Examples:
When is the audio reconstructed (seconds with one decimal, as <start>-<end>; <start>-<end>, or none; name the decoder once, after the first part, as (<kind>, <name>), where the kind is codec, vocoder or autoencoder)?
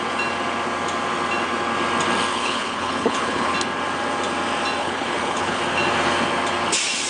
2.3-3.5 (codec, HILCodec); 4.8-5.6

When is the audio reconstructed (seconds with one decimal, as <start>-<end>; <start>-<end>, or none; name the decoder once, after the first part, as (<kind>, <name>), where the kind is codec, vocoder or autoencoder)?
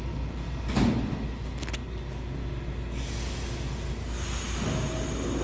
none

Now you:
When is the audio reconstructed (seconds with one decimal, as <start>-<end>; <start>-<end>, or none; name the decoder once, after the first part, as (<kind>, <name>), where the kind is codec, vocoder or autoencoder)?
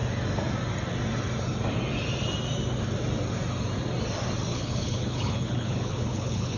4.5-6.6 (codec, HILCodec)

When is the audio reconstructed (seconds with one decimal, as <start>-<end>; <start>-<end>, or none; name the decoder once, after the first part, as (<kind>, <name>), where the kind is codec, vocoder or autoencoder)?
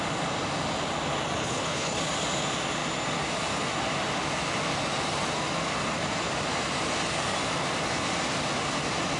1.4-2.0 (codec, HILCodec)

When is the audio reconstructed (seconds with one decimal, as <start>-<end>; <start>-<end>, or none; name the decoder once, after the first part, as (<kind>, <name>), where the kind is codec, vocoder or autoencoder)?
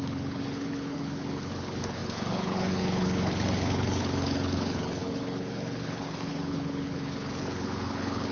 0.0-8.3 (codec, HILCodec)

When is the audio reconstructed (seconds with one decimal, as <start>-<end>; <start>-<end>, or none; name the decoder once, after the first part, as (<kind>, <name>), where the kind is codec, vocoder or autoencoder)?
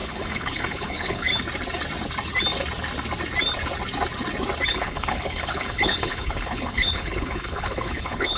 0.0-1.3 (codec, HILCodec); 4.7-8.4